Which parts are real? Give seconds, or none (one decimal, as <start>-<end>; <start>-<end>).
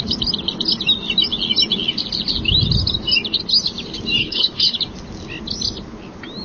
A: 0.0-4.2; 4.8-6.4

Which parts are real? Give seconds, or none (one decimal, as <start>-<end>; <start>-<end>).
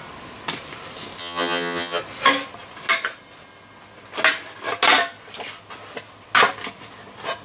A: 0.0-1.2; 2.0-7.4